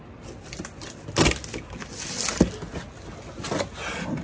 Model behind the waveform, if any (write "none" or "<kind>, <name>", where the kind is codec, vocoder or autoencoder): none